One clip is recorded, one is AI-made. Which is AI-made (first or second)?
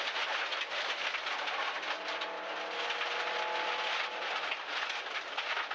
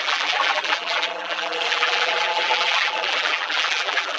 second